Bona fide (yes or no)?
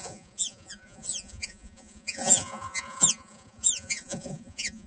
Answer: no